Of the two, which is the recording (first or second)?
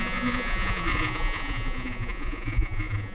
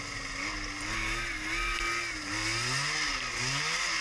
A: second